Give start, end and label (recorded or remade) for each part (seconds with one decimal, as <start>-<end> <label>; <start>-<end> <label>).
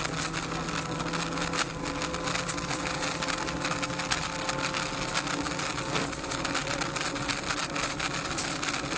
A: 0.0-9.0 recorded